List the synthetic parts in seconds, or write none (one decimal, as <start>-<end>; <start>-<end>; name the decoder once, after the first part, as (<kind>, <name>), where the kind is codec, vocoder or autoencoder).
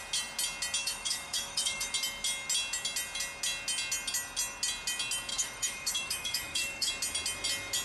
0.8-1.9 (autoencoder, DAC-VAE); 5.3-6.9